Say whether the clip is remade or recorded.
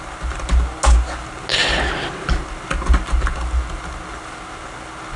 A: recorded